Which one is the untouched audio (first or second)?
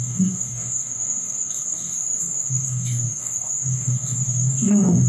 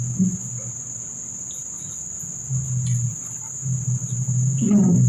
second